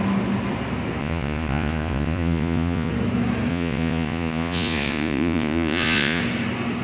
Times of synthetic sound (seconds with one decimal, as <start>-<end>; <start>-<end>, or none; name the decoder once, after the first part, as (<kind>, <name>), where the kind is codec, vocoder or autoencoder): 1.0-2.9 (vocoder, Vocos); 3.5-6.2